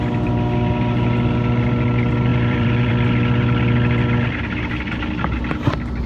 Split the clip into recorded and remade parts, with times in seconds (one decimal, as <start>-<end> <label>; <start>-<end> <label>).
0.0-2.3 recorded; 2.3-2.9 remade; 2.9-6.1 recorded